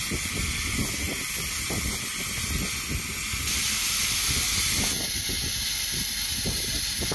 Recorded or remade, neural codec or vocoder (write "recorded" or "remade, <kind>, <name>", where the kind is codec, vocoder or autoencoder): recorded